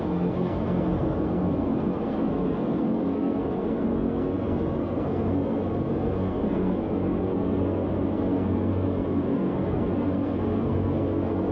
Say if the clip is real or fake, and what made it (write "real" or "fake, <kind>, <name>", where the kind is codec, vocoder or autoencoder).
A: fake, codec, SNAC